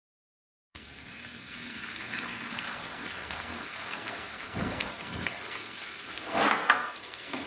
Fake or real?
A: fake